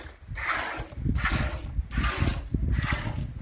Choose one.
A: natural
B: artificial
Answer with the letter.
A